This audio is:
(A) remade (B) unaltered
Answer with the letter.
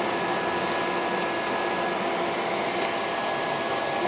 B